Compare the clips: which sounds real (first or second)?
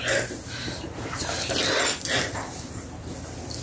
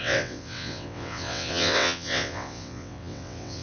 first